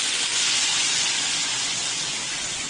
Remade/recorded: remade